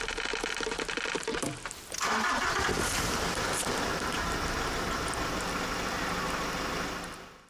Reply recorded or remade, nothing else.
remade